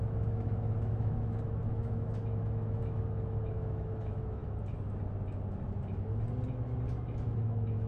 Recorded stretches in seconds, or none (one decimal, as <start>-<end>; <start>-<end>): 4.4-7.2

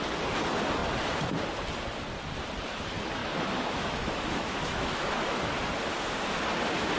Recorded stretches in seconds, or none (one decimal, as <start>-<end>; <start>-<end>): 0.0-3.2; 5.6-7.0

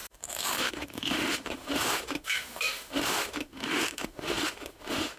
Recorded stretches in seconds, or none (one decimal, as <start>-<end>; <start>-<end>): none

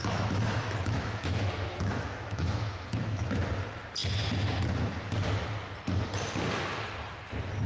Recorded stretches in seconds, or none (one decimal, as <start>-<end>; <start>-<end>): 3.4-7.7

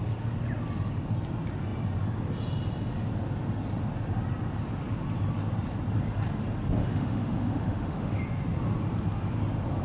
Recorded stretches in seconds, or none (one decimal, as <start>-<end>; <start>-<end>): 0.0-6.8; 8.2-9.8